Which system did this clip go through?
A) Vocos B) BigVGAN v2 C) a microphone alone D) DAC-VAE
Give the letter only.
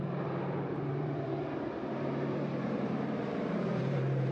B